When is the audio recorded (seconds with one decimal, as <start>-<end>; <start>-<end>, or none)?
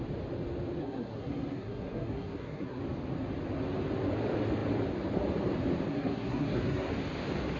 0.0-0.8; 2.8-5.9; 6.9-7.6